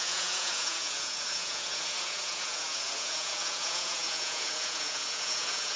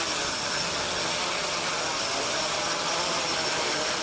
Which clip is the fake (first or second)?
first